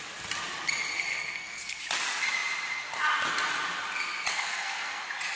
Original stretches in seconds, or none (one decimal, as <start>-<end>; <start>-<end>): 0.0-1.1; 1.8-4.3; 5.0-5.4